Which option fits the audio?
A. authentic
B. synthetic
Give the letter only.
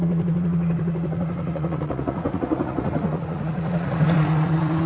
B